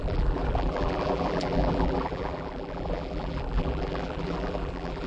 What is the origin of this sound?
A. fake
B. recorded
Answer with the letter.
A